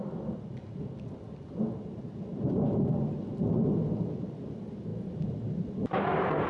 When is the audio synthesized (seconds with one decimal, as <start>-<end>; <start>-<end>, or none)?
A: 0.0-1.2; 2.3-3.8